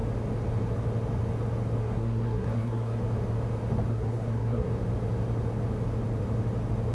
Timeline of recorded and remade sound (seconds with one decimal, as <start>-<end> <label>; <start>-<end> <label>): 0.0-1.8 recorded; 1.8-3.0 remade; 3.0-3.9 recorded; 3.9-4.7 remade; 4.7-6.9 recorded